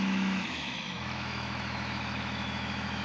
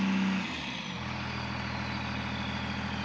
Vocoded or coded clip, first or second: first